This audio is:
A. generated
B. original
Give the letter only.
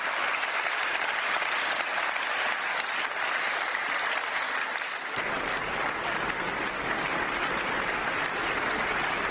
B